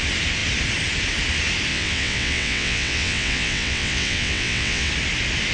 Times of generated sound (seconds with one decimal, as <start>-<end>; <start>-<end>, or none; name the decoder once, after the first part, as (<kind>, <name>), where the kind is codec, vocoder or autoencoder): 1.7-4.9 (vocoder, WaveNeXt)